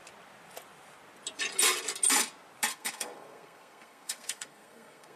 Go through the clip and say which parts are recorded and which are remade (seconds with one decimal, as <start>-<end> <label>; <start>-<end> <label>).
0.0-2.7 recorded; 2.7-5.2 remade